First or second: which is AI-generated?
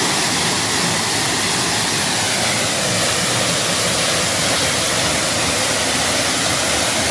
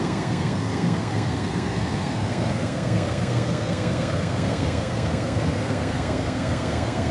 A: second